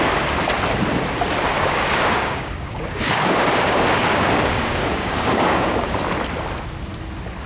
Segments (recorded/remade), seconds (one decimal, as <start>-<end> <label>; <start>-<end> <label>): 0.0-1.5 recorded; 1.5-5.9 remade; 5.9-7.5 recorded